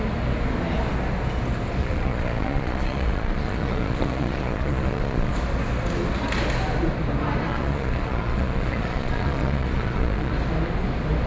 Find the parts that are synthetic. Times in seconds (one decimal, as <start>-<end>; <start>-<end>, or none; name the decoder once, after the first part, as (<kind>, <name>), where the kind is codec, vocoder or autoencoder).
1.8-5.3 (vocoder, Vocos); 7.5-10.3